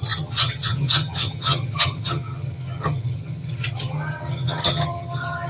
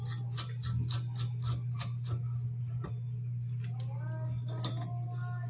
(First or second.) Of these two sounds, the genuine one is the second